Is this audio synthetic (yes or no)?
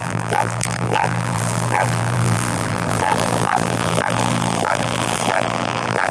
yes